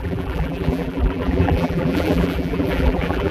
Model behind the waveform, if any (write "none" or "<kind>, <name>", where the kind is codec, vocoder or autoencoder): vocoder, BigVGAN v2